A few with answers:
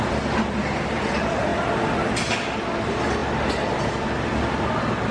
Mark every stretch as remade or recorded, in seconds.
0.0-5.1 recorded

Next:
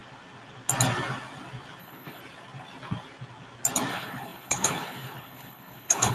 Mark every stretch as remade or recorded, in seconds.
0.0-1.8 recorded; 1.8-2.2 remade; 2.2-3.9 recorded; 3.9-6.1 remade

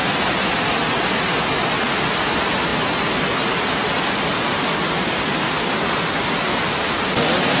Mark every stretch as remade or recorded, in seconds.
0.0-7.6 recorded

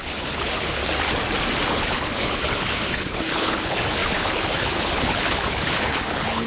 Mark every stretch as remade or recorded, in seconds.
0.0-0.8 remade; 0.8-1.7 recorded; 1.7-6.5 remade